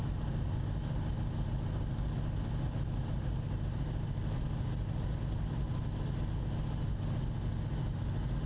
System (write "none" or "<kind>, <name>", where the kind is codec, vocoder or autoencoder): none